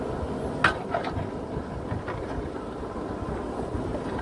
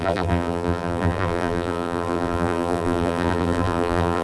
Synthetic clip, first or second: second